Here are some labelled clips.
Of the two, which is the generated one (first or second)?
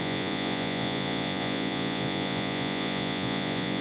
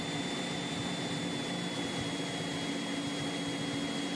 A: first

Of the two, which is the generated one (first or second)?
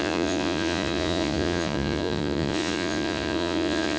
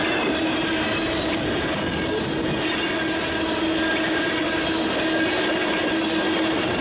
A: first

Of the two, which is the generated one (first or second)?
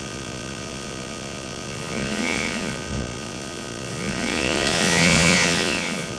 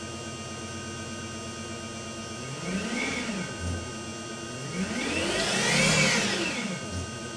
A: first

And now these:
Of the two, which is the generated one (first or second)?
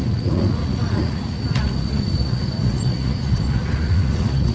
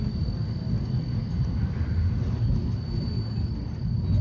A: first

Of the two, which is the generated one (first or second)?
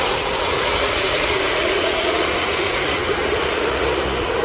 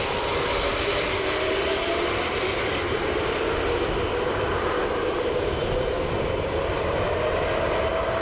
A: first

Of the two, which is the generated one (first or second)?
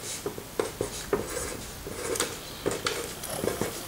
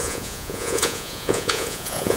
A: second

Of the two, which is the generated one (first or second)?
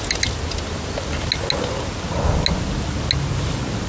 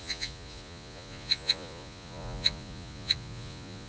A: second